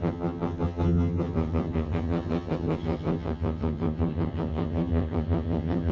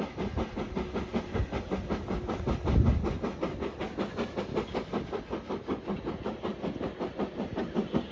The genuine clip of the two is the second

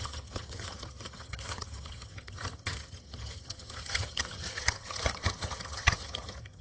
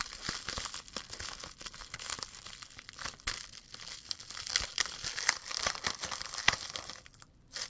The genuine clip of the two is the second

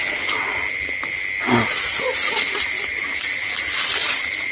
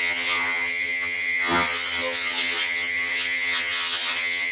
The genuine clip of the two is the first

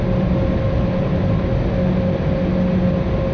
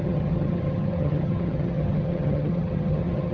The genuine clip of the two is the first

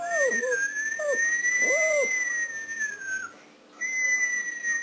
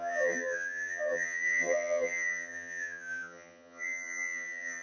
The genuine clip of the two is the first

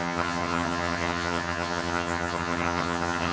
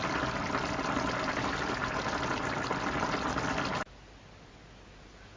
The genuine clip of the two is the second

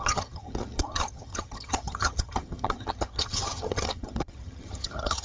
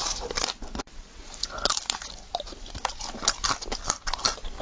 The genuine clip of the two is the second